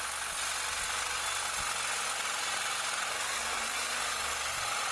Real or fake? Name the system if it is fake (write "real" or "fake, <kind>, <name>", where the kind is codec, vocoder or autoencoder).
real